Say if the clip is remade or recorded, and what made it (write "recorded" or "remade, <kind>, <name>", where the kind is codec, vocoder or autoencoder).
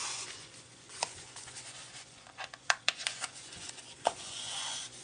remade, vocoder, Vocos